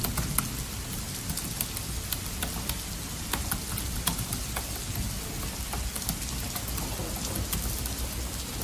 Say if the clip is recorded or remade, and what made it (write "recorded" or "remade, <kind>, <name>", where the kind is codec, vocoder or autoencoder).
recorded